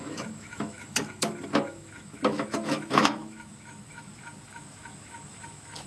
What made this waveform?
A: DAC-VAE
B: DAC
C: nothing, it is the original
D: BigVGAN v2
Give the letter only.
A